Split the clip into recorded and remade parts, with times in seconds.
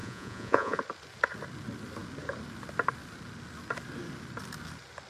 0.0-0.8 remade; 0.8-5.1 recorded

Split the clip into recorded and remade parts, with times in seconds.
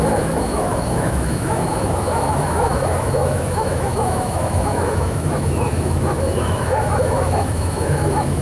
0.0-8.4 remade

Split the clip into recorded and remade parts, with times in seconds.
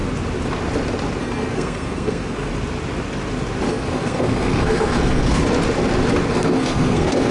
0.0-1.2 recorded; 1.2-2.5 remade; 2.5-3.7 recorded; 3.7-5.4 remade; 5.4-6.3 recorded; 6.3-7.3 remade